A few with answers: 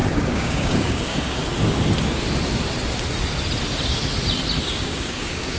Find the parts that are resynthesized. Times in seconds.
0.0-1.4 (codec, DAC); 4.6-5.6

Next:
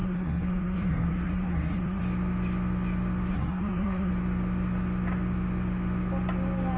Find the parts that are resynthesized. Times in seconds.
0.0-2.0 (codec, SNAC); 3.3-4.1

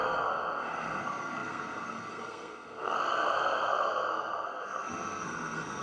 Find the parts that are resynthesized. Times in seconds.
0.0-5.8 (codec, SNAC)

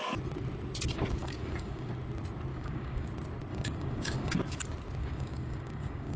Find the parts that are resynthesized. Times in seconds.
1.2-1.9 (codec, DAC); 2.5-3.1; 3.5-4.4; 5.0-6.2

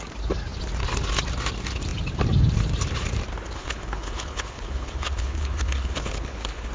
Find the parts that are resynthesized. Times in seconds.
3.6-6.7 (codec, HILCodec)

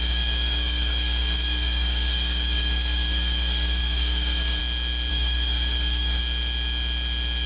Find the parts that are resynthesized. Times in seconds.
0.0-4.6 (codec, DAC); 5.1-6.2

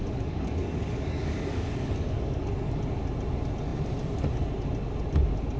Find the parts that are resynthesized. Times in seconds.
0.0-2.8 (codec, DAC)

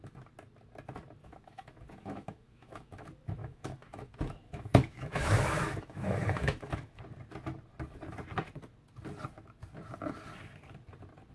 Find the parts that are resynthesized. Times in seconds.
1.2-3.0 (autoencoder, DAC-VAE); 3.4-7.0